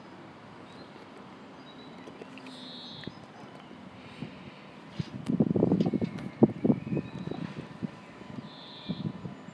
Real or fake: real